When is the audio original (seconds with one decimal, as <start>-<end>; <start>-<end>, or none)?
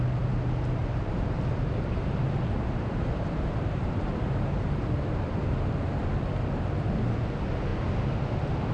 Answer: 0.0-0.8; 5.4-8.7